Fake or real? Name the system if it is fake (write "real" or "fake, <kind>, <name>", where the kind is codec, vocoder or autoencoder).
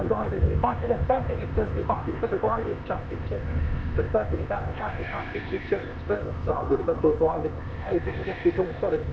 fake, codec, ZipCodec